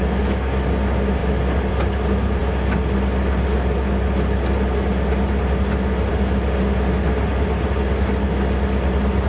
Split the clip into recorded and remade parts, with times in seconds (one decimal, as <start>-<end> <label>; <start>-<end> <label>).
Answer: 0.0-9.3 recorded